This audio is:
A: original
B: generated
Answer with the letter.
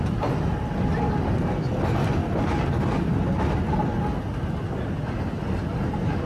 A